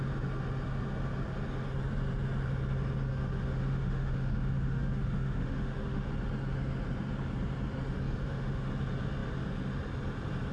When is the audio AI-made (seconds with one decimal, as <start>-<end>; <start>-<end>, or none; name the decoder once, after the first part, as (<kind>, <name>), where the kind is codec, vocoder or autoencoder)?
3.1-6.1 (autoencoder, DAC-VAE); 8.2-8.7